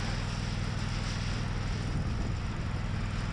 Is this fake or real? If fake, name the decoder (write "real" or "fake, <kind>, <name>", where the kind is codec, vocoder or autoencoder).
real